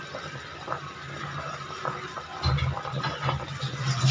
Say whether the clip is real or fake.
real